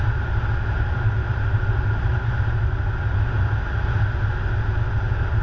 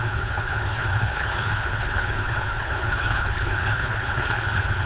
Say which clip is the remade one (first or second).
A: second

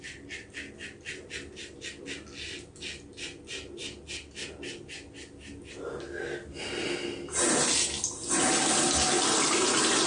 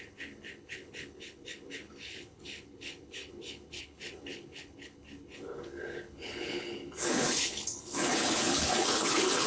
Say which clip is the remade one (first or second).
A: second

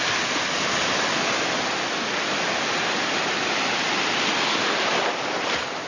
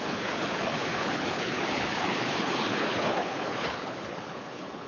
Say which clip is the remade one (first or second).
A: second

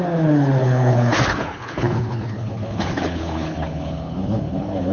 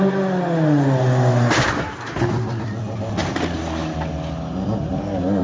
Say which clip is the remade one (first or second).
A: first